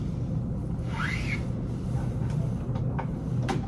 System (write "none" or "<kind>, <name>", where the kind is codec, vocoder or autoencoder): none